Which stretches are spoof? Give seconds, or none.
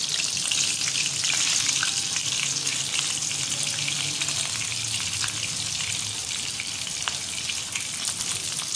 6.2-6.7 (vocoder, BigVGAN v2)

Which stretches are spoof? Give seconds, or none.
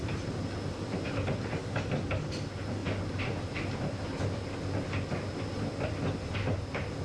none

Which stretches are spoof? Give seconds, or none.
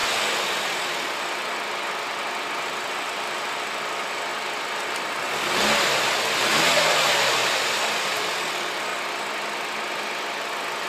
7.4-8.4 (vocoder, BigVGAN v2)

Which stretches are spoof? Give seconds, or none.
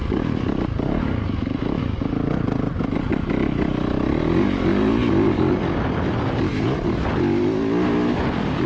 0.0-1.8 (vocoder, BigVGAN v2)